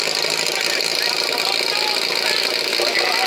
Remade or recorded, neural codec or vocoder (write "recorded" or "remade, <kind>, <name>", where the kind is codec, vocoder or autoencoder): recorded